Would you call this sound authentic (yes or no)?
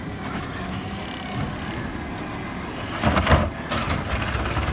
yes